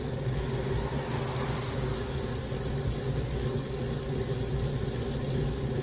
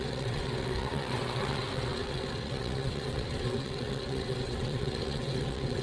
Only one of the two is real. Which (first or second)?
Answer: first